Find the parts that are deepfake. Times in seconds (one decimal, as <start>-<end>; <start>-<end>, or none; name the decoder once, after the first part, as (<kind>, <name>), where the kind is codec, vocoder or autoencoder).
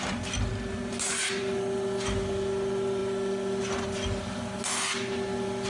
none